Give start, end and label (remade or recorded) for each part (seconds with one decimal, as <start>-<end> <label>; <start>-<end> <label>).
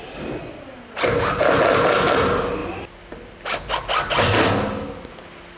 0.0-5.6 recorded